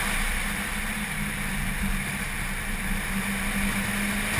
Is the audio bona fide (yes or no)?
yes